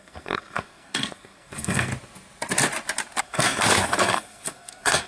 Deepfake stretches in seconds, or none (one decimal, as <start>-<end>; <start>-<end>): 0.0-1.9; 3.2-5.1